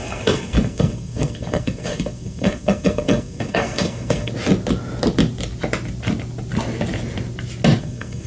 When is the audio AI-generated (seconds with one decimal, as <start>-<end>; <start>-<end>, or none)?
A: 0.0-4.3; 7.8-8.3

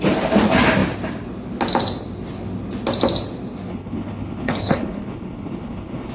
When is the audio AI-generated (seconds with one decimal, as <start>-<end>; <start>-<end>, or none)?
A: 3.7-6.1

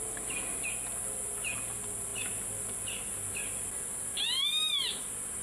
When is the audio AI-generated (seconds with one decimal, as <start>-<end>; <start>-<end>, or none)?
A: none